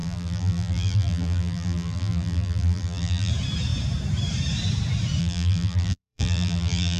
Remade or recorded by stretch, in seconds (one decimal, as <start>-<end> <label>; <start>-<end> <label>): 0.0-3.3 remade; 3.3-5.2 recorded; 5.2-7.0 remade